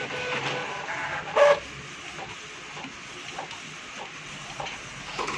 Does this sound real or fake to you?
real